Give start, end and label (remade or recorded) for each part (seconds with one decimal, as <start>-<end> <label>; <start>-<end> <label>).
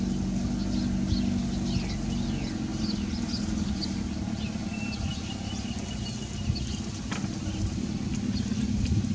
0.0-9.1 recorded